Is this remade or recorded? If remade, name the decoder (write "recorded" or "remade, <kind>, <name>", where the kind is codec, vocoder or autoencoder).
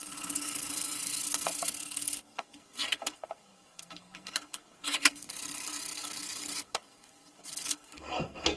remade, codec, SNAC